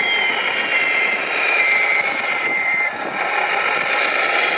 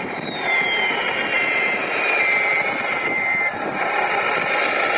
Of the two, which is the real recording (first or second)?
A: second